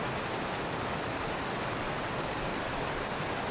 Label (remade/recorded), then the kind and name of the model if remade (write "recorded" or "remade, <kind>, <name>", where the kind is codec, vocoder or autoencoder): recorded